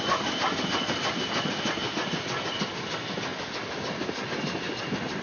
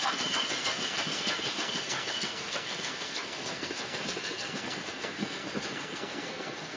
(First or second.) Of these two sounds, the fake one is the second